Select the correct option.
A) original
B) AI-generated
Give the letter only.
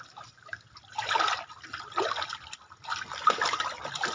A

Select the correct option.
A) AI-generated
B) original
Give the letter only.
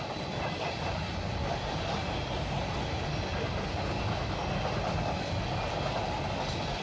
B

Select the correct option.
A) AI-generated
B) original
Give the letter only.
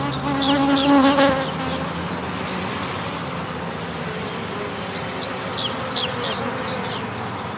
B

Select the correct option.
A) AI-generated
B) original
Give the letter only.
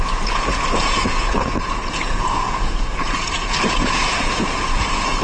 A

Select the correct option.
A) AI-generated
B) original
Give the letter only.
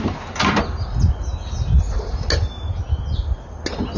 B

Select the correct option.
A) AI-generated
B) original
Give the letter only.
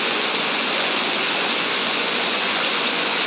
A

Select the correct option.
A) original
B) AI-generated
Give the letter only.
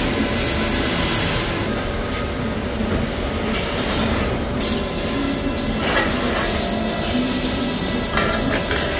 A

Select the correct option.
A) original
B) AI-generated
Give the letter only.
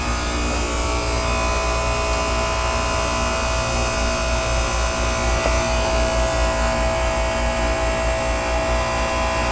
A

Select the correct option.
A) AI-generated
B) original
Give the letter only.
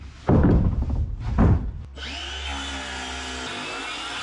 B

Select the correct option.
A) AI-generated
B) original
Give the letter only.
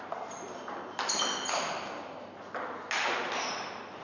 B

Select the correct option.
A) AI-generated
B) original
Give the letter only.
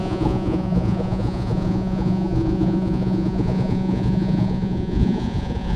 A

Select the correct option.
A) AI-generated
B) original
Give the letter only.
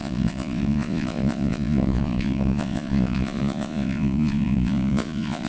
A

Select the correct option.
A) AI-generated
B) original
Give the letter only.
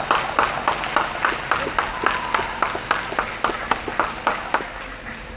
B